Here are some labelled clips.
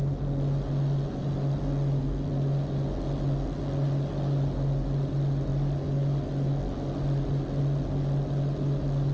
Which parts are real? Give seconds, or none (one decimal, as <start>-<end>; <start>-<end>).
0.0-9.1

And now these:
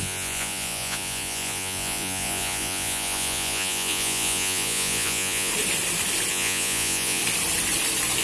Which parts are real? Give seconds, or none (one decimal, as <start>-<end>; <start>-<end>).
5.5-6.3; 7.2-8.2

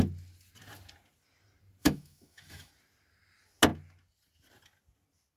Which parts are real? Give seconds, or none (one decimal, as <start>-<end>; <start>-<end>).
0.0-1.8; 2.7-5.4